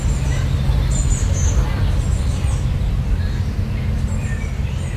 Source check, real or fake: real